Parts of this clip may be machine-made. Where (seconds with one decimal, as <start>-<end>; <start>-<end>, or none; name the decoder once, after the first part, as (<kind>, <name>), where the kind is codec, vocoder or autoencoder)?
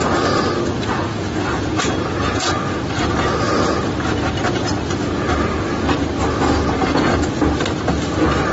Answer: 1.0-2.6 (vocoder, Vocos); 6.8-7.3